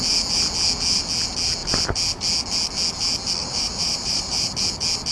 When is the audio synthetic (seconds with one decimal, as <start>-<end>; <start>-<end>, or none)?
3.4-4.5